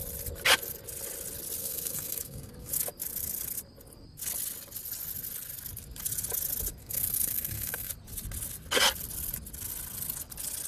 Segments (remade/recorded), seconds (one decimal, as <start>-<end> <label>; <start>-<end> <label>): 0.0-1.6 recorded; 1.6-2.7 remade; 2.7-6.8 recorded; 6.8-7.9 remade; 7.9-10.7 recorded